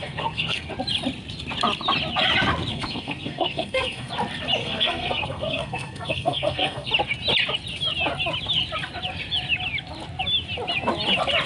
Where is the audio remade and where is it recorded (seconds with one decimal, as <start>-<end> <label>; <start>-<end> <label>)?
0.0-0.7 remade; 0.7-2.7 recorded; 2.7-4.1 remade; 4.1-4.6 recorded; 4.6-6.9 remade; 6.9-11.5 recorded